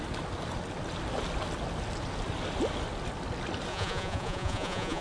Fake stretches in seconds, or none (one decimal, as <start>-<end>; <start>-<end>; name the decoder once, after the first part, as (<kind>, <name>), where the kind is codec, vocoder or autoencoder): 3.7-5.0 (vocoder, Vocos)

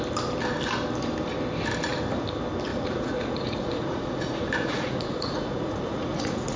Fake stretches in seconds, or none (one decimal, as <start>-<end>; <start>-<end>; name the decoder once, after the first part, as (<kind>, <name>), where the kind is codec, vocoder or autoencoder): 2.7-6.6 (vocoder, Vocos)

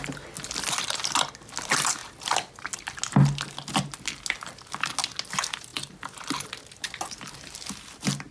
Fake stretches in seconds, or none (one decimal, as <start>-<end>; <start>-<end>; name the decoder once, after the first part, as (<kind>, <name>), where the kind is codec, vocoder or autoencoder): none

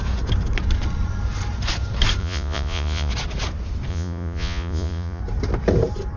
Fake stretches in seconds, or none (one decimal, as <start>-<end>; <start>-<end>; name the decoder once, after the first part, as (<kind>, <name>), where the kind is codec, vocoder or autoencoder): 2.2-3.1 (vocoder, Vocos); 3.9-5.2